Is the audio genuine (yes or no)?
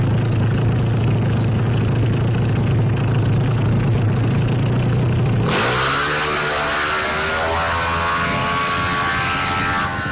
yes